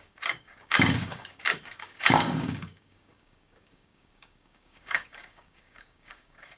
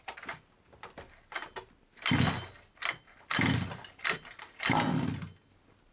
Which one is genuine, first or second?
second